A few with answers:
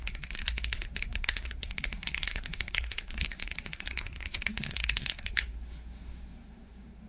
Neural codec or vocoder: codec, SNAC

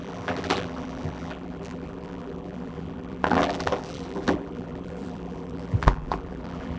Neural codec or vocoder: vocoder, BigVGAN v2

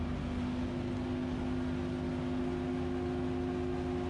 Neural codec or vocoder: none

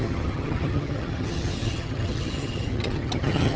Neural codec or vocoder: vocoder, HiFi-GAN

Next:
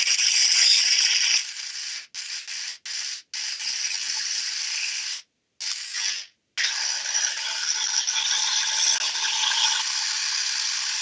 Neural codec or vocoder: none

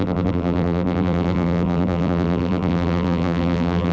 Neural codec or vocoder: vocoder, BigVGAN v2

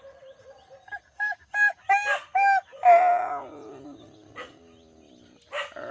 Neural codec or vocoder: none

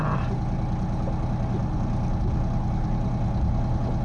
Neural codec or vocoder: none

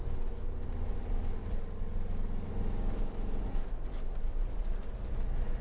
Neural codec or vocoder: none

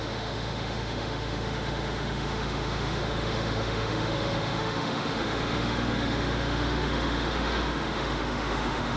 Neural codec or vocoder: autoencoder, DAC-VAE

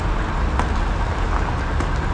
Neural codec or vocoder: none